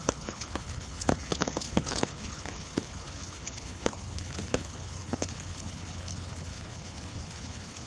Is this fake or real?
fake